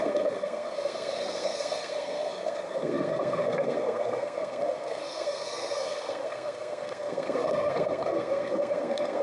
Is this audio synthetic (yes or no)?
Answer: yes